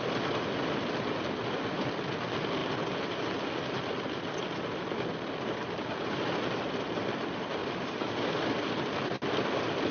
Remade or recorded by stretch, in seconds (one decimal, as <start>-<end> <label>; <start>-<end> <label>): 0.0-7.6 recorded; 7.6-8.5 remade; 8.5-9.9 recorded